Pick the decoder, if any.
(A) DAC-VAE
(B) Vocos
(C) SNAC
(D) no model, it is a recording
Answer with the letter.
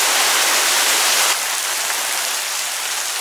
D